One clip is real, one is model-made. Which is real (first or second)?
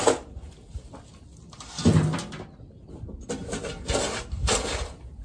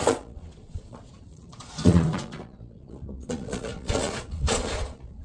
first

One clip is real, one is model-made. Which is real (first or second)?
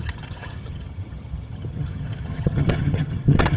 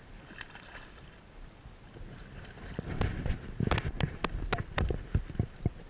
second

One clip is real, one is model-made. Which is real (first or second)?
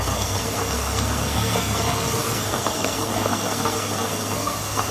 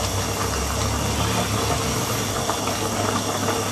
second